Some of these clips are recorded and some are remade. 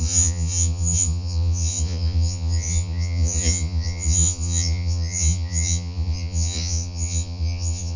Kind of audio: remade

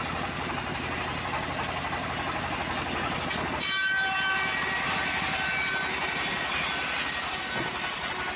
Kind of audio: recorded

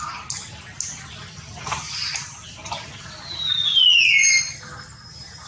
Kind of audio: recorded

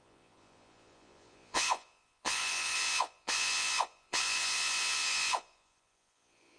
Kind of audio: remade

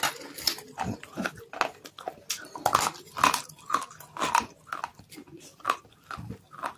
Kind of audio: recorded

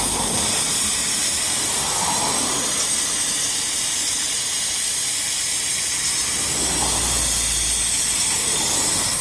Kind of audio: recorded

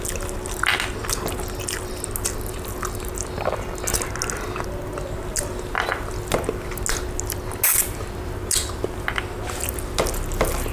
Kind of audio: recorded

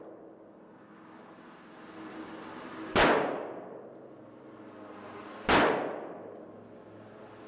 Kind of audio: recorded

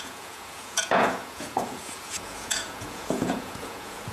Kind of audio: remade